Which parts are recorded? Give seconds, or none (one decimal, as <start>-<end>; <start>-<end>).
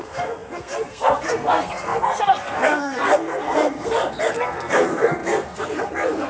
none